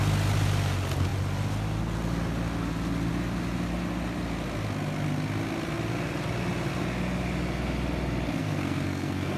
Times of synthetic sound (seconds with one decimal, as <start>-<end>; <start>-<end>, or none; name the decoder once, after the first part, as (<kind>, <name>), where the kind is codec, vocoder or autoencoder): 8.4-9.4 (codec, SNAC)